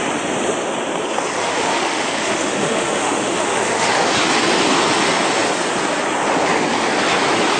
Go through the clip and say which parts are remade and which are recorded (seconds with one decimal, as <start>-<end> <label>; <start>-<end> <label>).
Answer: 0.0-1.4 recorded; 1.4-4.1 remade; 4.1-7.6 recorded